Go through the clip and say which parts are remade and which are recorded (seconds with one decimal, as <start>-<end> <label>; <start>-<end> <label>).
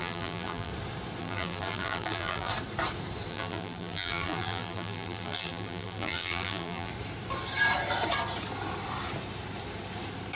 0.0-0.7 remade; 0.7-1.2 recorded; 1.2-2.5 remade; 2.5-3.3 recorded; 3.3-6.9 remade; 6.9-10.4 recorded